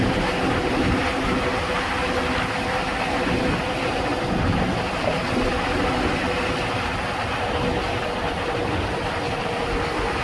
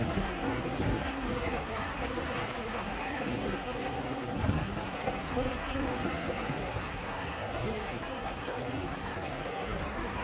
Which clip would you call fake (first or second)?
second